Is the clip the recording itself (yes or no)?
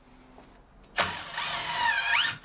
yes